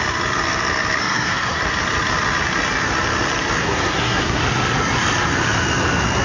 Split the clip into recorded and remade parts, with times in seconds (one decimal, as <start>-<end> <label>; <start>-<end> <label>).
0.0-1.0 recorded; 1.0-1.6 remade; 1.6-3.6 recorded; 3.6-4.4 remade; 4.4-6.2 recorded